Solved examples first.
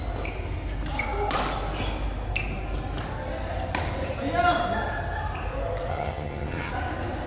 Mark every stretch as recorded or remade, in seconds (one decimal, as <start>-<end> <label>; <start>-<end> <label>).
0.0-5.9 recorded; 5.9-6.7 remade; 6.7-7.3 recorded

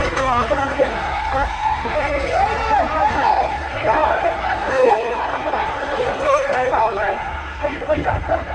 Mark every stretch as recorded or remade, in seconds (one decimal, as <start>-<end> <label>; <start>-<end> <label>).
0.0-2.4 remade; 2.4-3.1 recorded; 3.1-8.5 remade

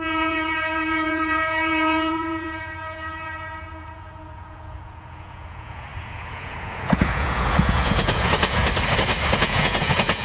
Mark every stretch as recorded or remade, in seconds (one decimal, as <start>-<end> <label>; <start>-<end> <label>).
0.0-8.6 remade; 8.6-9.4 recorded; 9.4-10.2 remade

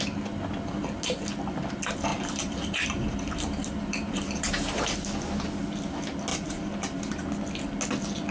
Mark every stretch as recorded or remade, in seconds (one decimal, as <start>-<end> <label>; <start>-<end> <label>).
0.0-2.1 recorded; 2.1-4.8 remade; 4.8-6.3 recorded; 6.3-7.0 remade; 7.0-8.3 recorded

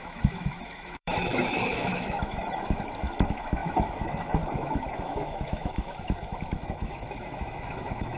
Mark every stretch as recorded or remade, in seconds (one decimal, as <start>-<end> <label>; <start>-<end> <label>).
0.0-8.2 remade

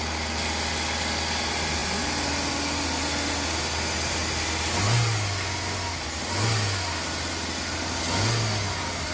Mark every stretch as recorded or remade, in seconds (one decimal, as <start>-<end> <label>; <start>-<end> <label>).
0.0-9.1 recorded

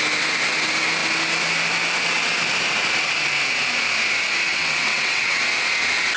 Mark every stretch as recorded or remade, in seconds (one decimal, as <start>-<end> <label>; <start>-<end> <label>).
0.0-4.5 recorded; 4.5-5.4 remade; 5.4-6.2 recorded

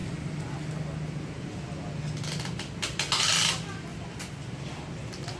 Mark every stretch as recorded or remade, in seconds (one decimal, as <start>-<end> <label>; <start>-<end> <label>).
0.0-5.4 recorded